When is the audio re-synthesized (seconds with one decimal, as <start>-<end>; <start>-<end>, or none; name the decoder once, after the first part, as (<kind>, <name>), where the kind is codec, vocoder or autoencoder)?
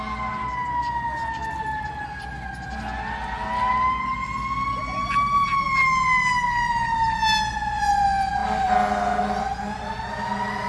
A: none